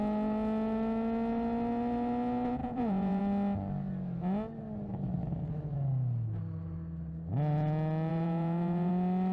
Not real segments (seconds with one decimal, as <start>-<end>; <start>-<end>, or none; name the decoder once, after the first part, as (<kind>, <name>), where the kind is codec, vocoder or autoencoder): 2.6-3.2 (vocoder, Vocos); 8.1-8.9